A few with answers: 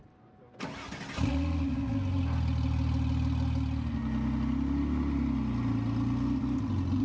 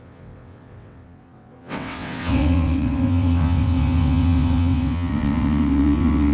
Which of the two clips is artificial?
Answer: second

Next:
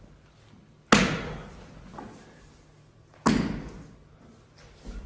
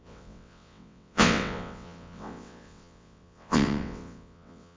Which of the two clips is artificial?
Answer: second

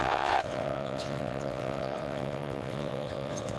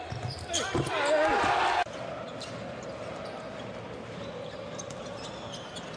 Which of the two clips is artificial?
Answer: first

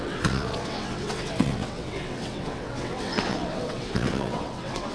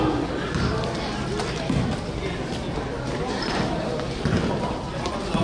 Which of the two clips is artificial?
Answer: first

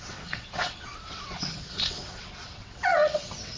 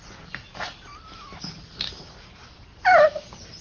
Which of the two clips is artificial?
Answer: first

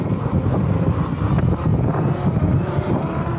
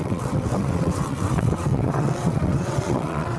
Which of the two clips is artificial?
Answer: second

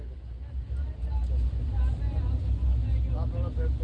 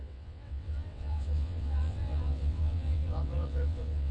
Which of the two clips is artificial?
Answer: second